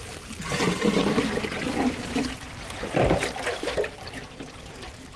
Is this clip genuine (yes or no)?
yes